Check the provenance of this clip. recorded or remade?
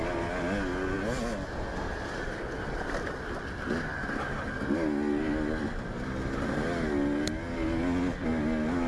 recorded